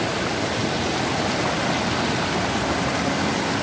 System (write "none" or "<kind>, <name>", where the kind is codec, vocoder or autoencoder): none